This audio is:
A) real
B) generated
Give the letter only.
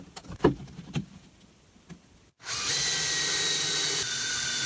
A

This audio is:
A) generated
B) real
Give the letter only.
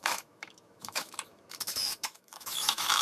A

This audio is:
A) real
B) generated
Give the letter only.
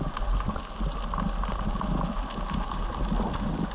A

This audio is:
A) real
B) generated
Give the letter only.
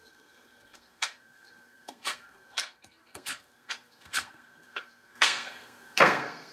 B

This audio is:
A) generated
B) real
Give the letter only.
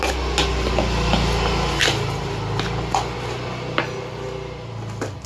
B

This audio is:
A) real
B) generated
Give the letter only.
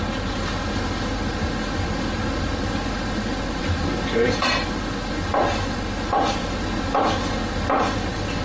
A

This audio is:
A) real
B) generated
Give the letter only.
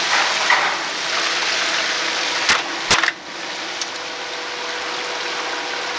A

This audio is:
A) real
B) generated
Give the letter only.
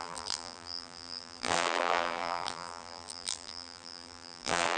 B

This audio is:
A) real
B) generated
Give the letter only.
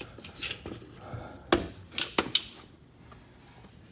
A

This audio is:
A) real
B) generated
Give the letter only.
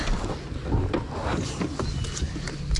A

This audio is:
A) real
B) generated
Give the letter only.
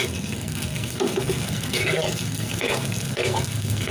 B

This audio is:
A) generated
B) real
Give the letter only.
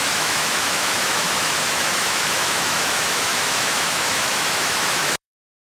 A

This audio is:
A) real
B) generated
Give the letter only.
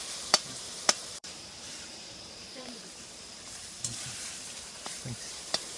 B